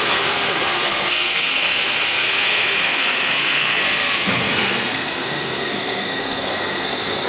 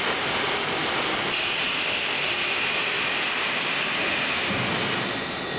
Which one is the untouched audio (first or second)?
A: second